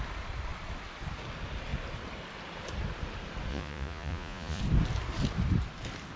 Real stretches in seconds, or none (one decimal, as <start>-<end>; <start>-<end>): 0.0-3.5; 4.6-6.2